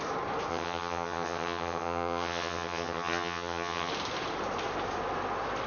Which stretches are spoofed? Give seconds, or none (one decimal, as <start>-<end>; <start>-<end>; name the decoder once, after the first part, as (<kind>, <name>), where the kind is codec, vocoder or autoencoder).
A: 0.5-3.9 (vocoder, HiFi-GAN)